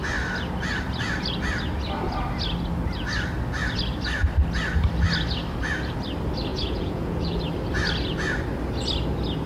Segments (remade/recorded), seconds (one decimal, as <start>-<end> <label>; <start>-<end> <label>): 0.0-6.5 recorded; 6.5-7.4 remade; 7.4-9.5 recorded